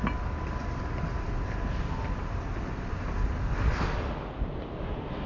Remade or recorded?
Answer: recorded